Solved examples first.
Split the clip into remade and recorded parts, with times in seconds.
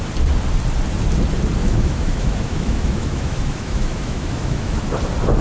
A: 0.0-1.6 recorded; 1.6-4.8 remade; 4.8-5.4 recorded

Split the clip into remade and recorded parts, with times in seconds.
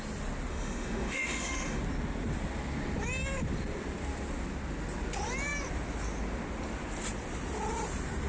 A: 0.0-0.5 recorded; 0.5-1.8 remade; 1.8-8.3 recorded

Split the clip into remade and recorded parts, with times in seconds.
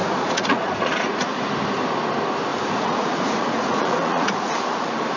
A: 0.0-1.4 remade; 1.4-2.5 recorded; 2.5-4.5 remade; 4.5-5.2 recorded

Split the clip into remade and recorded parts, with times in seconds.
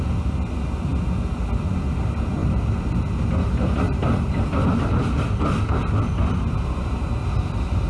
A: 0.0-2.4 recorded; 2.4-7.1 remade; 7.1-7.9 recorded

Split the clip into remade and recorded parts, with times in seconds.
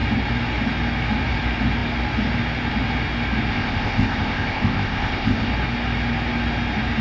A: 0.0-3.5 recorded; 3.5-5.5 remade; 5.5-7.0 recorded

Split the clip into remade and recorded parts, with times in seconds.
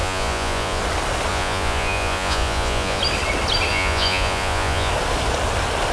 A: 0.0-0.8 remade; 0.8-1.3 recorded; 1.3-3.0 remade; 3.0-3.7 recorded; 3.7-4.9 remade; 4.9-5.9 recorded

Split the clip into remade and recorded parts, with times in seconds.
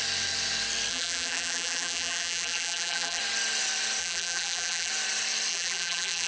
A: 0.0-0.9 recorded; 0.9-3.2 remade; 3.2-4.0 recorded; 4.0-4.9 remade; 4.9-5.5 recorded; 5.5-6.3 remade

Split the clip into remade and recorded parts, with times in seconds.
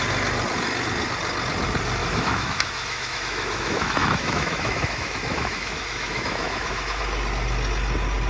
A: 0.0-2.0 recorded; 2.0-7.0 remade; 7.0-8.3 recorded